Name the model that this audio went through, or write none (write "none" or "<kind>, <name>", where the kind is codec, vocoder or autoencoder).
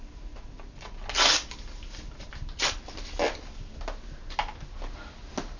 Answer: none